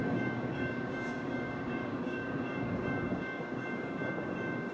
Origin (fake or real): fake